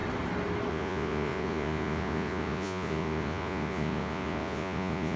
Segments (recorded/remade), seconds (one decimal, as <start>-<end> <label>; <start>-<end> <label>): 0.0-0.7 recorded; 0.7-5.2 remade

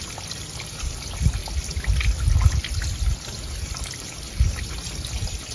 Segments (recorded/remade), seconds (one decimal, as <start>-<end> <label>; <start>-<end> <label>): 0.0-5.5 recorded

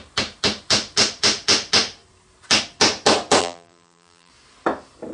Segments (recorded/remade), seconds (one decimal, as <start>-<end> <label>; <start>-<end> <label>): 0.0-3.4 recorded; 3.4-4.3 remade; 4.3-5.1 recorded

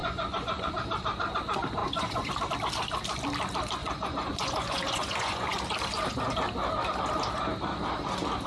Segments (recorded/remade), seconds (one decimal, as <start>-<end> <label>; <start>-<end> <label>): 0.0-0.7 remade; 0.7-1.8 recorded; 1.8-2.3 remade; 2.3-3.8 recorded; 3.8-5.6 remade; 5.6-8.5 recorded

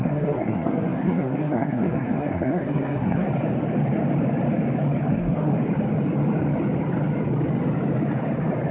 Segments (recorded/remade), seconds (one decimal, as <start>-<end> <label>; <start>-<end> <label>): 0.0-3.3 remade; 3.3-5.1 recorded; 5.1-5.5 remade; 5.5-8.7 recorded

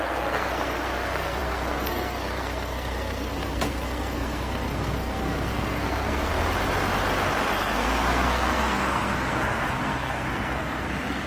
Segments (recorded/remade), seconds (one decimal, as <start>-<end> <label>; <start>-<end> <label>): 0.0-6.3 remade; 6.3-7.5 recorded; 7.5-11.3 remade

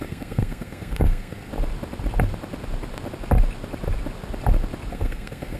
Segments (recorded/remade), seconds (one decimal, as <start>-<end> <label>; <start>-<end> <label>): 0.0-1.5 remade; 1.5-4.9 recorded; 4.9-5.6 remade

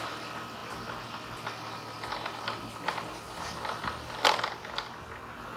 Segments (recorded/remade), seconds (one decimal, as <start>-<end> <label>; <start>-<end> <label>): 0.0-5.6 recorded